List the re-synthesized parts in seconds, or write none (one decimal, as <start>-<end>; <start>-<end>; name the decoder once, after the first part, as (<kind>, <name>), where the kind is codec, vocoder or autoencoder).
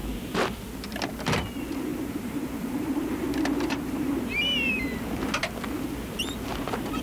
1.9-4.7 (vocoder, BigVGAN v2)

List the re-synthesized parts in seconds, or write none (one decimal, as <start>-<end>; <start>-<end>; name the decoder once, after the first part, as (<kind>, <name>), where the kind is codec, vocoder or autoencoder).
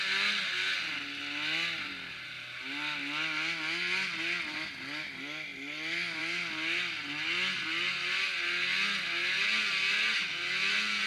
none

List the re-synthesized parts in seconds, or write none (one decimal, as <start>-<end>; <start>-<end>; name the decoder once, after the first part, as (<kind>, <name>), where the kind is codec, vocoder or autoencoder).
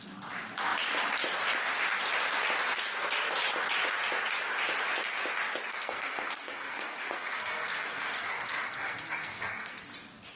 5.7-9.8 (codec, SNAC)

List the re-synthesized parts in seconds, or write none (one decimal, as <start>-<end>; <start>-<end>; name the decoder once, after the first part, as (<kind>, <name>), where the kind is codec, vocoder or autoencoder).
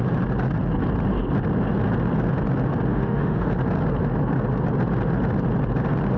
2.9-3.5 (autoencoder, DAC-VAE)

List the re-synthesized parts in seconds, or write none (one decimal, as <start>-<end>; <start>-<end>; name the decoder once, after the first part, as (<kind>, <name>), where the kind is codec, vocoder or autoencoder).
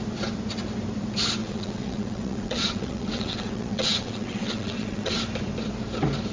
1.4-5.2 (vocoder, WaveNeXt)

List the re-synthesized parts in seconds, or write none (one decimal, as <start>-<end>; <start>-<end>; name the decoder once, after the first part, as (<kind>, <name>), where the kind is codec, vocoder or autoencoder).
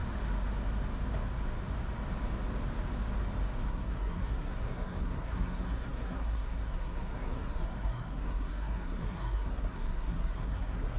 3.7-11.0 (codec, SNAC)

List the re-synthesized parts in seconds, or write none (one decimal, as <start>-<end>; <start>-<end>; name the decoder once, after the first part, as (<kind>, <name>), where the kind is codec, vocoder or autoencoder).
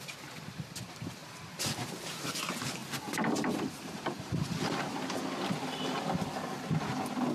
1.2-2.3 (vocoder, BigVGAN v2); 2.8-4.7